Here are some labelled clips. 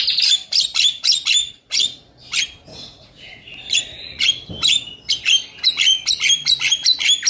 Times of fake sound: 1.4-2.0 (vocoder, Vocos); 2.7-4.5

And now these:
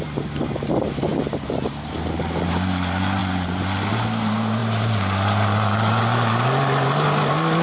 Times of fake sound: none

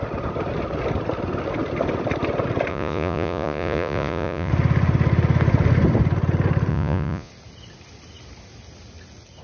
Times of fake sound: 2.7-4.5 (vocoder, Vocos); 6.7-7.3

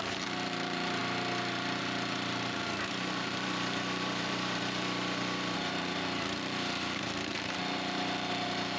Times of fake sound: 0.0-1.0 (vocoder, BigVGAN v2); 1.8-8.8

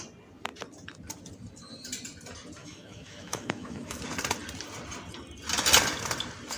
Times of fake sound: 2.6-4.0 (autoencoder, DAC-VAE)

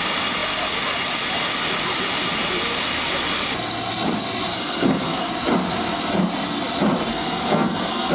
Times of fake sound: 4.5-5.3 (codec, SNAC); 7.1-8.1